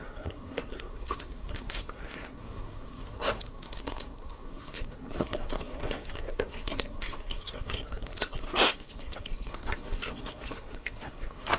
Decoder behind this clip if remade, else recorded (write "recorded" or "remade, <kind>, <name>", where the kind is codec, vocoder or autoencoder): remade, codec, SNAC